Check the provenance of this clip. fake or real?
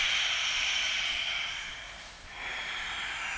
fake